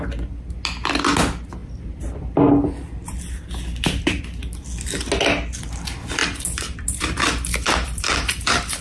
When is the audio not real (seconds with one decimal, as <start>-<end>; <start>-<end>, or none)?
1.6-4.2; 6.2-8.8